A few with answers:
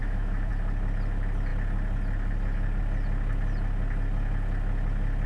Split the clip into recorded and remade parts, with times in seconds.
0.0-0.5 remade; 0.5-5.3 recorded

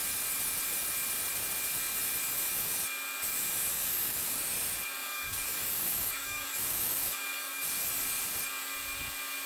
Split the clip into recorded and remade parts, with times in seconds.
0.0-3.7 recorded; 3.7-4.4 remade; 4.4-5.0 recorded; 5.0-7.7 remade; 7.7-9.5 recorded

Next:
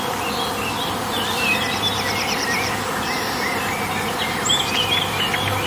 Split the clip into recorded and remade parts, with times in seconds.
0.0-5.7 recorded